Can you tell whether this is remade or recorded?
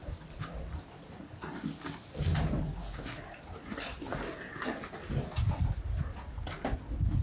recorded